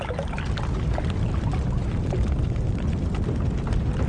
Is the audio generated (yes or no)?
no